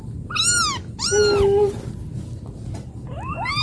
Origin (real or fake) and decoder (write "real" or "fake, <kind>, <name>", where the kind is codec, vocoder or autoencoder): real